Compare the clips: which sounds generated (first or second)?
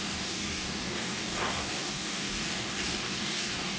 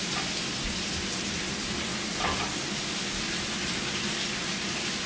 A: first